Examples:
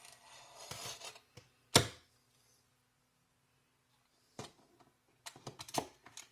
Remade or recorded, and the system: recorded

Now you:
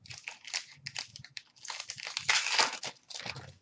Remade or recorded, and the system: recorded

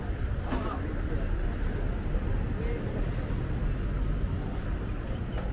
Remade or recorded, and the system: recorded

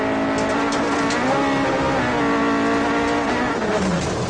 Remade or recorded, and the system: recorded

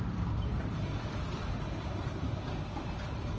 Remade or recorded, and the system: remade, vocoder, BigVGAN v2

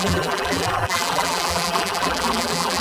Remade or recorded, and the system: remade, vocoder, BigVGAN v2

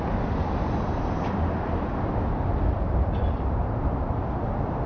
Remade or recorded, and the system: recorded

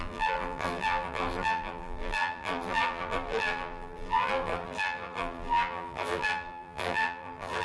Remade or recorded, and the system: remade, vocoder, BigVGAN v2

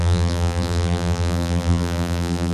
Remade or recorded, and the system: remade, vocoder, BigVGAN v2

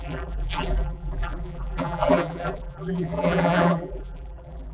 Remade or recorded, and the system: remade, vocoder, BigVGAN v2